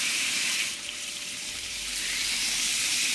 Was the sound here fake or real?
fake